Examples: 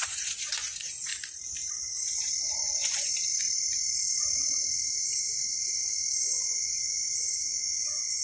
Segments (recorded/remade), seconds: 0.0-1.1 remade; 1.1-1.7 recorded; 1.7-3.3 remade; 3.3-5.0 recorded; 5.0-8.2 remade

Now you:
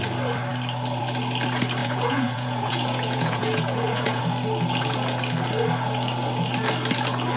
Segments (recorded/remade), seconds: 0.0-1.8 recorded; 1.8-4.2 remade; 4.2-7.4 recorded

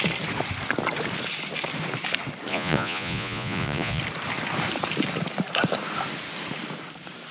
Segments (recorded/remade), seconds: 0.0-2.5 recorded; 2.5-4.0 remade; 4.0-7.3 recorded

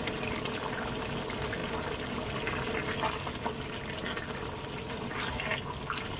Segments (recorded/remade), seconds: 0.0-6.2 recorded